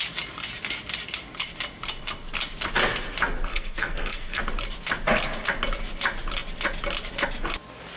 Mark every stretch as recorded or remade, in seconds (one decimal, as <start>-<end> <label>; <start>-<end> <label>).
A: 0.0-3.5 recorded; 3.5-4.4 remade; 4.4-8.0 recorded